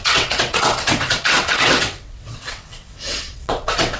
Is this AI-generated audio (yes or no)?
yes